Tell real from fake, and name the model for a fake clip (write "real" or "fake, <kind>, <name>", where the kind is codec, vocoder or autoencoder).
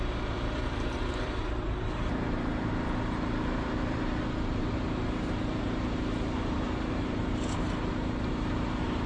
fake, vocoder, BigVGAN v2